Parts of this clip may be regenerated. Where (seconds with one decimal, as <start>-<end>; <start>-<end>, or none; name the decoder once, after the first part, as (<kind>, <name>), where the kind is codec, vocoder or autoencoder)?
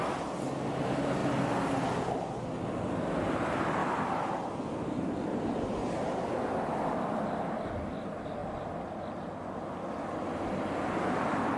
none